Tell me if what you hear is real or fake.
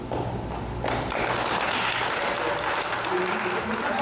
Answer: real